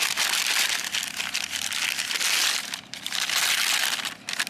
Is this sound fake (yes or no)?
no